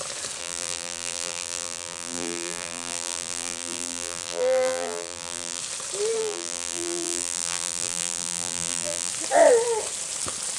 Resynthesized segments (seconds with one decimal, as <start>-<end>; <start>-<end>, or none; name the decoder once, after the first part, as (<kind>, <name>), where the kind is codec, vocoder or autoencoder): 0.4-5.6 (vocoder, BigVGAN v2); 6.2-9.1

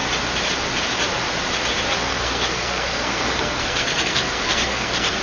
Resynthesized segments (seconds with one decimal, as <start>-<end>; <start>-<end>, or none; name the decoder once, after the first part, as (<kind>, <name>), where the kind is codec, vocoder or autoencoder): 2.0-5.2 (codec, SNAC)

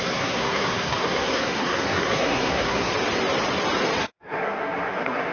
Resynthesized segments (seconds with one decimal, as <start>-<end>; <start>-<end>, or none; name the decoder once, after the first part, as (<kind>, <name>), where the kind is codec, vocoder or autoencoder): 0.0-2.9 (codec, SNAC); 4.0-5.3

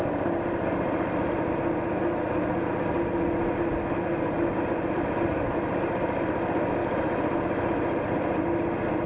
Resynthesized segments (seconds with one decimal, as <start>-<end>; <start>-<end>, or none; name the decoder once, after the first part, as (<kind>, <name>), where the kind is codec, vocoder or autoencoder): none

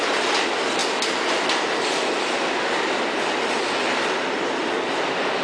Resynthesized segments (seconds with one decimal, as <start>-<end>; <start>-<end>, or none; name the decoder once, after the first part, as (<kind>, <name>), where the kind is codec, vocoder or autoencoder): 0.8-1.7 (vocoder, BigVGAN v2)

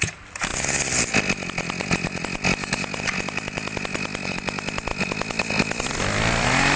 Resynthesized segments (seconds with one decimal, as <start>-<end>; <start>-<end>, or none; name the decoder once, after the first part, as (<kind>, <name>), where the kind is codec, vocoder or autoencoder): none

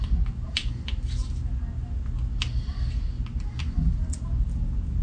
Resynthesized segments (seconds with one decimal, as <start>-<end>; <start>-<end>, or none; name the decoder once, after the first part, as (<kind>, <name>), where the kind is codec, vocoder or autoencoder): none

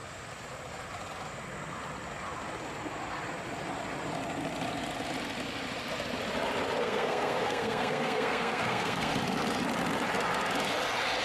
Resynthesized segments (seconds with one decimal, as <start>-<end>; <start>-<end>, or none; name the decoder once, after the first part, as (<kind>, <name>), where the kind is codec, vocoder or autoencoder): 6.8-9.1 (codec, SNAC)